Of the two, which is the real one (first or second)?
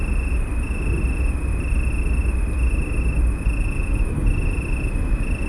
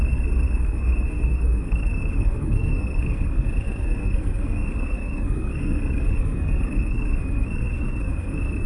first